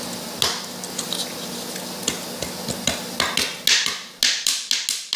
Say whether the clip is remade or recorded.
recorded